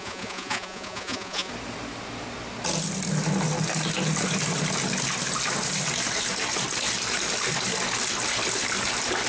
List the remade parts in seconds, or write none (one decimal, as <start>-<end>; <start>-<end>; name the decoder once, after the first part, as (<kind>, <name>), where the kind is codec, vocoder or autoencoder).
0.0-1.5 (vocoder, Vocos)